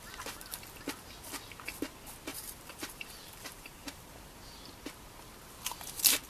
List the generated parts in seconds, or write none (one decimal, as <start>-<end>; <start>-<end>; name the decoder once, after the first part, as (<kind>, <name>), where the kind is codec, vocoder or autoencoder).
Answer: 2.3-4.1 (vocoder, BigVGAN v2)